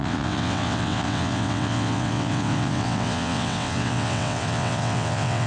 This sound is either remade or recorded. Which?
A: remade